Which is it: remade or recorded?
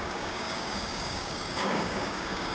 remade